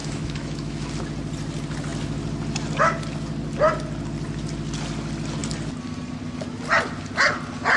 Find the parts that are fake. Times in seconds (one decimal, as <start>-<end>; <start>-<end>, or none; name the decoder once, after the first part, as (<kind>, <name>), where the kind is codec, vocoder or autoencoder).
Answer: 0.0-0.9 (autoencoder, DAC-VAE)